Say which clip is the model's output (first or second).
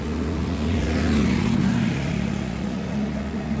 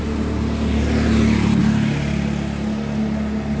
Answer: first